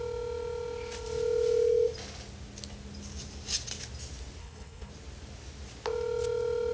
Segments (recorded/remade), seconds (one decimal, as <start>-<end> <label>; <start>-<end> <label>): 0.0-4.4 recorded; 4.4-4.9 remade; 4.9-6.7 recorded